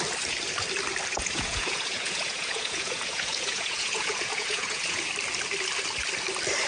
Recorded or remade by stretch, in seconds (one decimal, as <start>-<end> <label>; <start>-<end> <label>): 0.0-1.1 recorded; 1.1-5.1 remade; 5.1-6.7 recorded